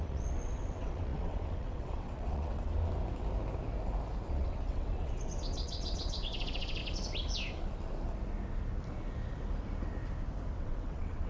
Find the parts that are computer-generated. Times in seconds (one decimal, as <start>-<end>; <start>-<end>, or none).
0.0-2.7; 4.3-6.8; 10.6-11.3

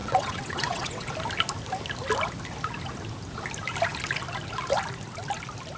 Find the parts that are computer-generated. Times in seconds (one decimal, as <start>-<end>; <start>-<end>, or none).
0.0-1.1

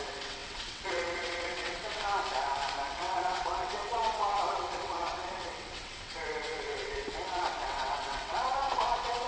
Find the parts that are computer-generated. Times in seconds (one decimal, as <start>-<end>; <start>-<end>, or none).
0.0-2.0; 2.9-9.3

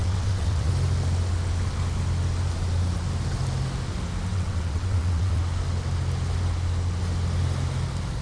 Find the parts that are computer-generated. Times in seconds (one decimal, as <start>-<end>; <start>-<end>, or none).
0.0-0.7; 4.3-5.4

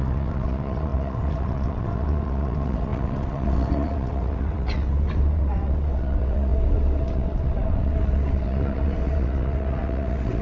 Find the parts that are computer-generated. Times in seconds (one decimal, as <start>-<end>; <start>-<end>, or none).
0.0-10.4

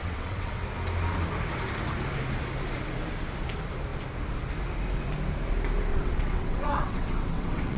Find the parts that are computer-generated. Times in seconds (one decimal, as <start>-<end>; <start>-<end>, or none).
0.0-0.5; 5.9-7.8

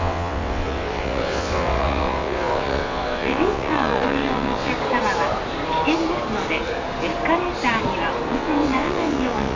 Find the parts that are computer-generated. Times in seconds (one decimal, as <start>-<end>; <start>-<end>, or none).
0.0-4.7; 8.3-9.6

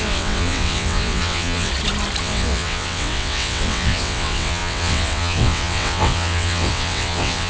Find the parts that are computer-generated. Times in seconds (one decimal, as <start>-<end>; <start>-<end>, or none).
0.0-1.7; 2.2-7.5